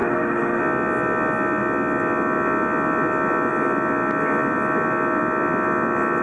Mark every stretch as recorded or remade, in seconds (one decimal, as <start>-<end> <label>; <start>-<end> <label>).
0.0-0.6 remade; 0.6-6.2 recorded